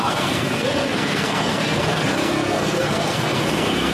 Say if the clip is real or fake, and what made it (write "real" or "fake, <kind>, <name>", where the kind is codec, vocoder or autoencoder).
fake, codec, SNAC